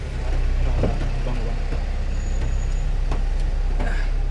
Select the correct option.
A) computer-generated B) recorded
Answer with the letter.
B